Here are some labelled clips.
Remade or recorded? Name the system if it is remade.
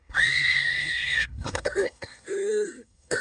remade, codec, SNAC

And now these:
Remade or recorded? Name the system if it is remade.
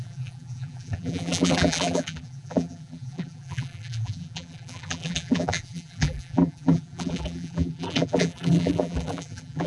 remade, vocoder, BigVGAN v2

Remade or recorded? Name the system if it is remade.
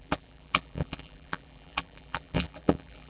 remade, vocoder, BigVGAN v2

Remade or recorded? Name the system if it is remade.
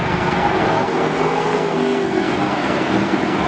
remade, codec, SNAC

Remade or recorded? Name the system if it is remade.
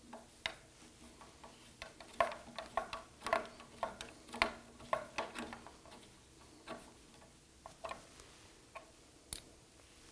recorded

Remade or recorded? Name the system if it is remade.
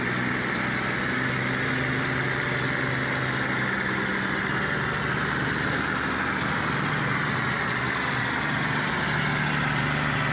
recorded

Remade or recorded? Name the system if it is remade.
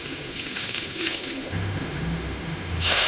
remade, autoencoder, DAC-VAE